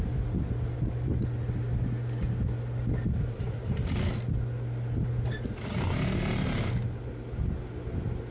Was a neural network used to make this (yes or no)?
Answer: no